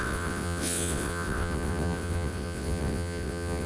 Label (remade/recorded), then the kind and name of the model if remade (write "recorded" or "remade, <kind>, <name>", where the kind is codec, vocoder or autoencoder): remade, vocoder, WaveNeXt